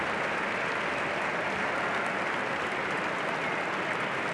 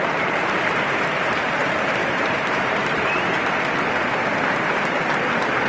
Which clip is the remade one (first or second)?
second